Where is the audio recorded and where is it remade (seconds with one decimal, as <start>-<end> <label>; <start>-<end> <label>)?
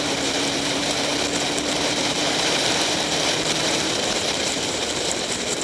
0.0-1.1 remade; 1.1-1.7 recorded; 1.7-5.6 remade